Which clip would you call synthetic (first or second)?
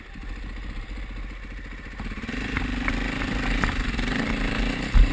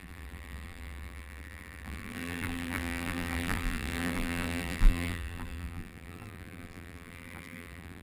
second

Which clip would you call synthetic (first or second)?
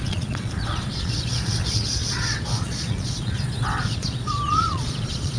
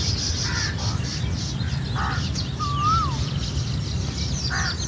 first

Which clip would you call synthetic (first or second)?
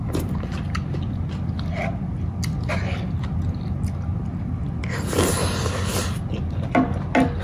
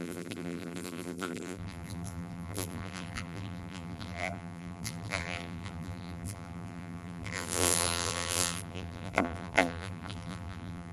second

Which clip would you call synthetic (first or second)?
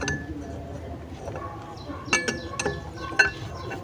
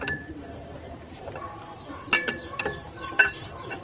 second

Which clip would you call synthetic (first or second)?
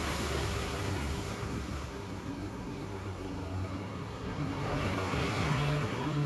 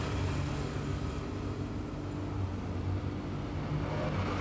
first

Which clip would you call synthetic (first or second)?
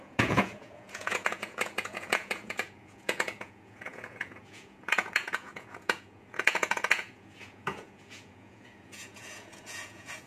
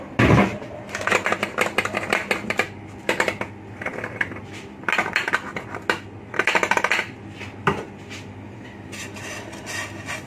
first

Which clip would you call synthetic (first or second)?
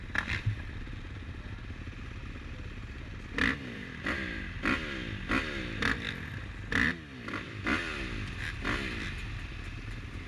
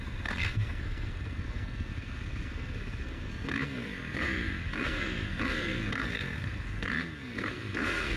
second